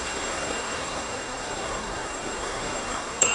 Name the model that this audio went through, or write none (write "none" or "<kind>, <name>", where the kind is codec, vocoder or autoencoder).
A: codec, SNAC